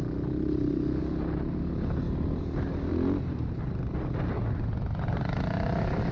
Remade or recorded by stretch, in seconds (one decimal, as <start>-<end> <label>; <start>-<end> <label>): 0.0-6.1 recorded